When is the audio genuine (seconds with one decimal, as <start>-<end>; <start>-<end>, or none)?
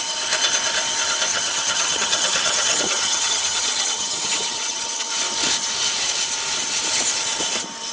0.0-1.3; 5.1-7.9